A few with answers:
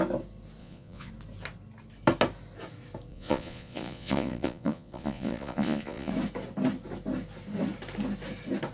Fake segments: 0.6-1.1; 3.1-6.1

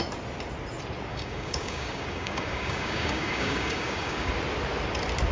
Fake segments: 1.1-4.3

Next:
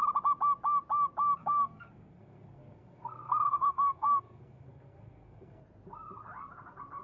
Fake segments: 1.4-5.6